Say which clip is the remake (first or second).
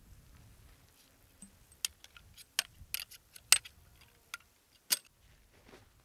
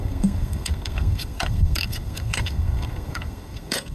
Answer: second